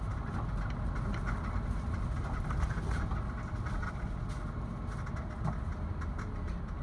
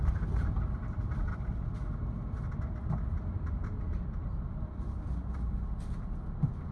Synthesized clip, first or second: second